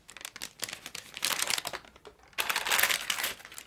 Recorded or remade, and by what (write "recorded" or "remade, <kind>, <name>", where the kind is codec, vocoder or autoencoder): recorded